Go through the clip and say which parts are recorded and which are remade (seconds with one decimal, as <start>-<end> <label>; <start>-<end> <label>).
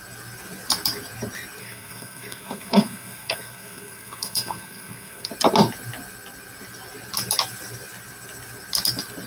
0.0-1.6 recorded; 1.6-5.3 remade; 5.3-9.3 recorded